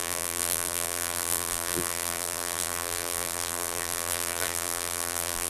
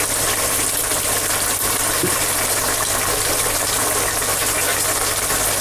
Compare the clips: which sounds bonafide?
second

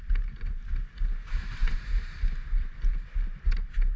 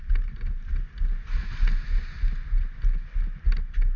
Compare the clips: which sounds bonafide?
second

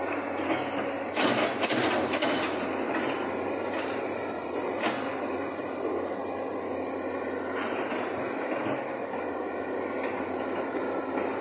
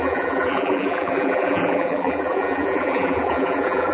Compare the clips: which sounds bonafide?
first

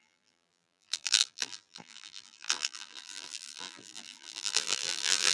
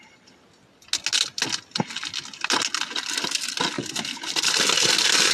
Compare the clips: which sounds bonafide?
second